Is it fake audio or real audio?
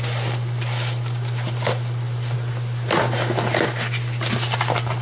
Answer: real